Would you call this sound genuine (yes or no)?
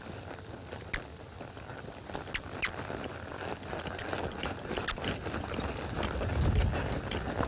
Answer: yes